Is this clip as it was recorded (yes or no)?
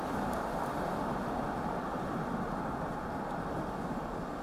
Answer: yes